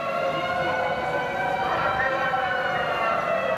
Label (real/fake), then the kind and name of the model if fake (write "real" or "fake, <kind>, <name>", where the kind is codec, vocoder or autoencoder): real